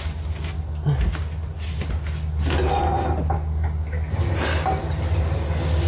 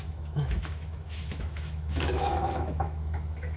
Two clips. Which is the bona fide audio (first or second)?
first